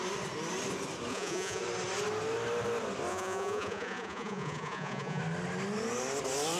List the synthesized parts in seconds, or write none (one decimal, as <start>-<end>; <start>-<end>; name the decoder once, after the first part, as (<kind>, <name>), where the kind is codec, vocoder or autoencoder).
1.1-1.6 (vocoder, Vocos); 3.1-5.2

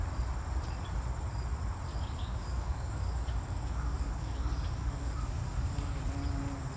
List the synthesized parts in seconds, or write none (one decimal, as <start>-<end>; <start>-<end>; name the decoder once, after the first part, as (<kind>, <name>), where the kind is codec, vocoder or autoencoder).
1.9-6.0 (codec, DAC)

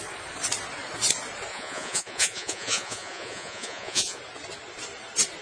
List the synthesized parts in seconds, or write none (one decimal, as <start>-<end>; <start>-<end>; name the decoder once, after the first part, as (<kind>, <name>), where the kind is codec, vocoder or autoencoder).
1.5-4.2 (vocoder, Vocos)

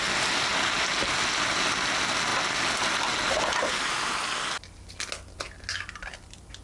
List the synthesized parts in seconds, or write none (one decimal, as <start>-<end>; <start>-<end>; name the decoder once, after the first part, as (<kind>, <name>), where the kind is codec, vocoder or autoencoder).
none